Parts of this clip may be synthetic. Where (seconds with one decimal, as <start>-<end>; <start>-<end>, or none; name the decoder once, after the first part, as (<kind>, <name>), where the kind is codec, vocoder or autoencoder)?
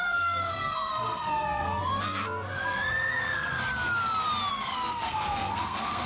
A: 0.0-3.6 (codec, SNAC); 4.5-6.1